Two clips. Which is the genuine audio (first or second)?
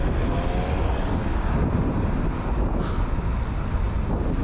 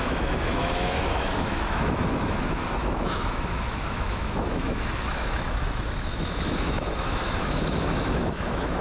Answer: first